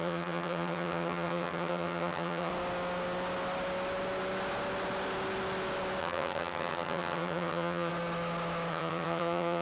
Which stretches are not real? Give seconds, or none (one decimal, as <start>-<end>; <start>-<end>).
0.0-2.5; 6.0-7.9; 8.7-9.6